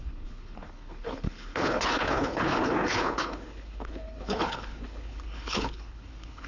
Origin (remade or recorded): remade